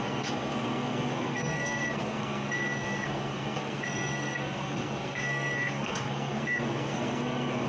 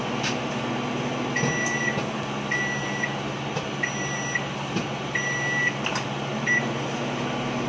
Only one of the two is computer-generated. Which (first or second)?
first